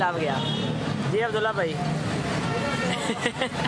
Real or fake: real